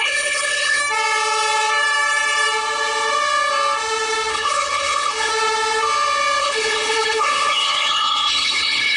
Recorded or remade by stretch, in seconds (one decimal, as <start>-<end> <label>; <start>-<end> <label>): 0.0-0.8 remade; 0.8-4.3 recorded; 4.3-5.3 remade; 5.3-6.4 recorded; 6.4-9.0 remade